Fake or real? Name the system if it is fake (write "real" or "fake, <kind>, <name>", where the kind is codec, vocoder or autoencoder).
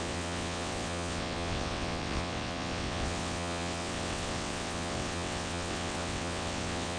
fake, vocoder, WaveNeXt